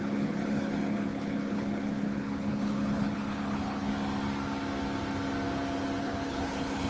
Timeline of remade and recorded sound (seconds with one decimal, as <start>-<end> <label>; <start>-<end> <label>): 0.0-3.9 remade; 3.9-6.0 recorded; 6.0-6.9 remade